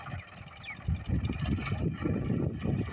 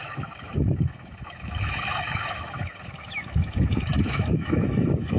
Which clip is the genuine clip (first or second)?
first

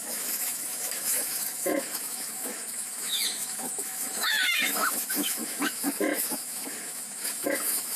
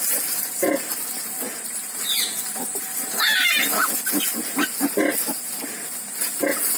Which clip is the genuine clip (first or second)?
second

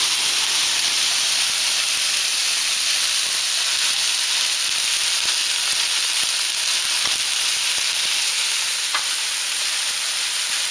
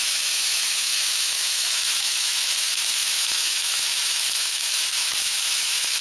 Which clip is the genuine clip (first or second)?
first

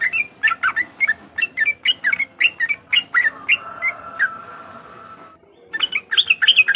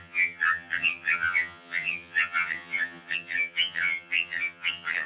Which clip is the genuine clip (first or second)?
first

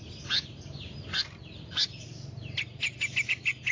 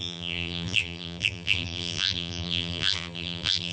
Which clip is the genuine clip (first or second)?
first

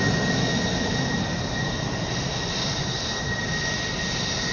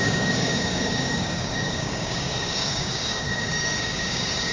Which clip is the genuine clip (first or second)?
first